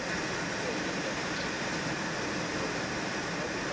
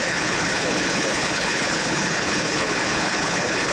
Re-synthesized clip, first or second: second